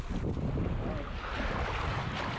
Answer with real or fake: real